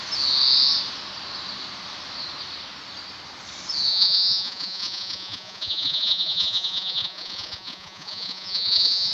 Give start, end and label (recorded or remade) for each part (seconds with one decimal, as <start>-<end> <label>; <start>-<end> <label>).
0.0-3.9 recorded; 3.9-9.1 remade